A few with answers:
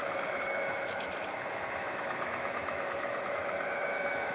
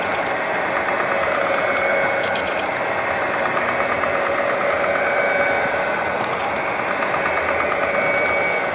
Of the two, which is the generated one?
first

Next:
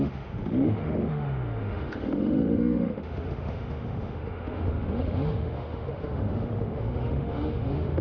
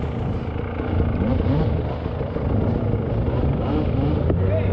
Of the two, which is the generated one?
first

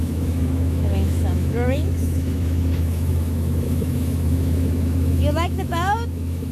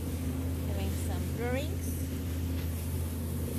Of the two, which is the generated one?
first